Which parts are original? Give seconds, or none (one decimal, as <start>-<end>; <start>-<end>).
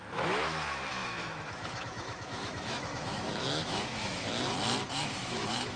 4.3-4.9